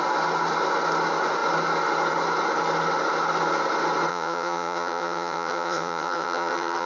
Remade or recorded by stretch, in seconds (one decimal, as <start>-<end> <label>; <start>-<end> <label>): 0.0-4.1 recorded; 4.1-6.9 remade